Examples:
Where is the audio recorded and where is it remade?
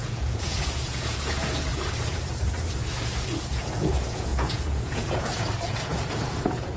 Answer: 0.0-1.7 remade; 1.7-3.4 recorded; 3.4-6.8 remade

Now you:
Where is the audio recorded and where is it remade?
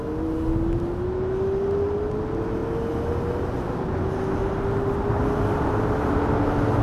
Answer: 0.0-6.8 recorded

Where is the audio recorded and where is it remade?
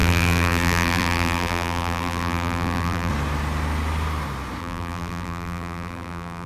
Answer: 0.0-3.1 remade; 3.1-4.6 recorded; 4.6-6.5 remade